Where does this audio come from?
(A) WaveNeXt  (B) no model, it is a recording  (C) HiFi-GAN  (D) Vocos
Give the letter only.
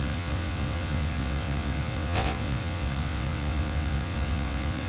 A